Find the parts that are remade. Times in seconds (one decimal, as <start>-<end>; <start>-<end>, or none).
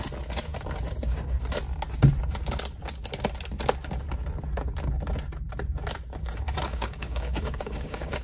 6.7-8.2